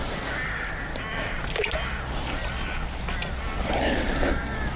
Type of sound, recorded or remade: recorded